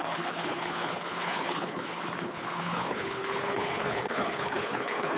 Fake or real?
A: fake